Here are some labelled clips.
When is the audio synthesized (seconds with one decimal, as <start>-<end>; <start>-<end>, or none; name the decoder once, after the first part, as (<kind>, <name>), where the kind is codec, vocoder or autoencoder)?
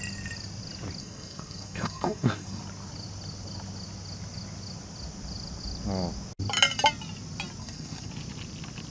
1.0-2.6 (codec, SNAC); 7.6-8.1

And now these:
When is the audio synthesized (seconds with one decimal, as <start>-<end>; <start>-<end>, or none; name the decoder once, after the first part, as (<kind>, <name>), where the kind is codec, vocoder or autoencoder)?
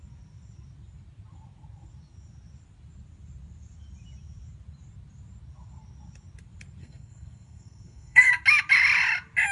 6.8-8.3 (codec, SNAC)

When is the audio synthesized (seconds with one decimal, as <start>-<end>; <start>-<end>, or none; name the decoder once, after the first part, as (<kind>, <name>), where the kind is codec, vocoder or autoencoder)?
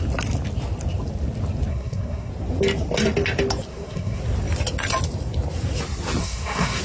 1.7-2.3 (codec, SNAC); 3.7-4.2; 6.2-6.8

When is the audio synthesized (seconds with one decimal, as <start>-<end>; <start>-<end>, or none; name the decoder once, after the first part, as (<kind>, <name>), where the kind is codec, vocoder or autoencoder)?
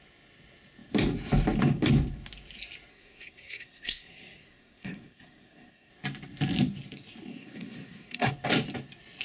2.9-5.9 (codec, SNAC); 7.3-8.3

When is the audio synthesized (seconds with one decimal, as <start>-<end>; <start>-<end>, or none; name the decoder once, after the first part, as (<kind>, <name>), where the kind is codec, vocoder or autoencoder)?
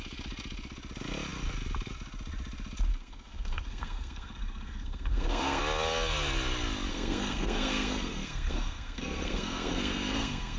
2.9-5.6 (codec, SNAC); 6.9-10.6